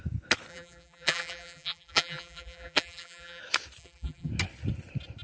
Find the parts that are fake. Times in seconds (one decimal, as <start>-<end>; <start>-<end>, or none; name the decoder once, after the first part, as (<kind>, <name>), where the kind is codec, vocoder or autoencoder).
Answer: 0.5-3.4 (vocoder, BigVGAN v2); 3.8-4.3